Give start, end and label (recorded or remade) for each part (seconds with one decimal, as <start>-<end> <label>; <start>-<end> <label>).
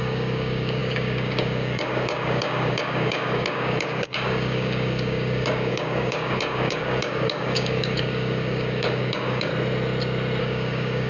0.0-9.5 remade; 9.5-10.4 recorded; 10.4-11.1 remade